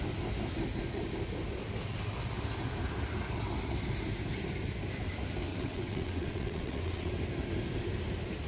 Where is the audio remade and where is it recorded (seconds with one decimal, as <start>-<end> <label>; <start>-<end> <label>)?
0.0-5.5 recorded; 5.5-7.1 remade; 7.1-8.5 recorded